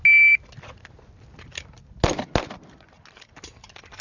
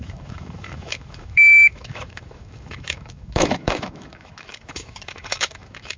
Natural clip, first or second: first